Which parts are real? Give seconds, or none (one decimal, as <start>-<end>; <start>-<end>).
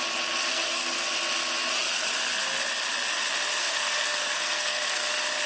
0.0-0.5; 1.0-3.6; 5.1-5.5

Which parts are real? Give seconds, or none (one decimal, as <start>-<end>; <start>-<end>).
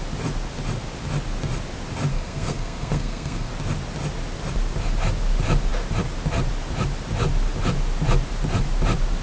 0.0-2.1; 3.5-9.2